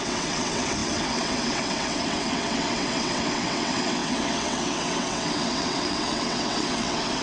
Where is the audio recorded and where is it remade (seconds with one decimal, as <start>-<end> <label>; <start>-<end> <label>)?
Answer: 0.0-7.2 remade